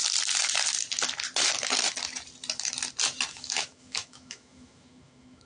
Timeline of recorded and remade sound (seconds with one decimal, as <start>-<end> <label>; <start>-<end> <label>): 0.0-3.3 recorded; 3.3-5.5 remade